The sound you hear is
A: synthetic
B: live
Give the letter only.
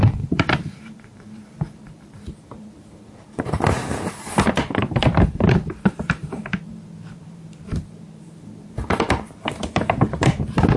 A